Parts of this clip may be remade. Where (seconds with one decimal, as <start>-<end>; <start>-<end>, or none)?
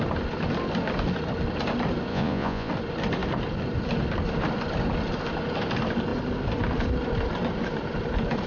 2.1-2.7